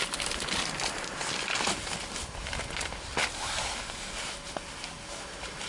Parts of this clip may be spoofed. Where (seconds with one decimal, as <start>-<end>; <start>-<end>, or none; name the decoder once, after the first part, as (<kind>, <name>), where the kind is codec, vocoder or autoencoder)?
3.2-4.2 (codec, DAC)